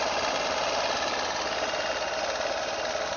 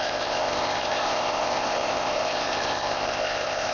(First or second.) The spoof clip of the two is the second